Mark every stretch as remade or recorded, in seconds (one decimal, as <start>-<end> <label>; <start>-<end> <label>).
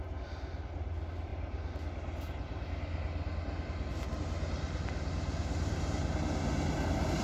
0.0-5.4 recorded; 5.4-6.1 remade; 6.1-7.2 recorded